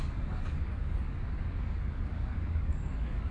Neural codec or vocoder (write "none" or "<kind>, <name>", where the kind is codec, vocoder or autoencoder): codec, DAC